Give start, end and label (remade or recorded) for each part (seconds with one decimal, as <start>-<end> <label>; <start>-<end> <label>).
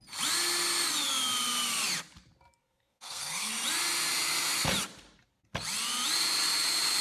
0.0-2.6 recorded; 2.6-3.5 remade; 3.5-7.0 recorded